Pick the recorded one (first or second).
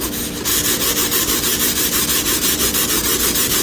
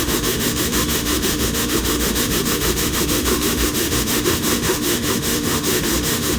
first